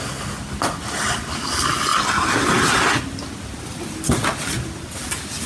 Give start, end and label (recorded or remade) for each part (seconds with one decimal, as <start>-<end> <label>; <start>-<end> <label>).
0.0-5.5 recorded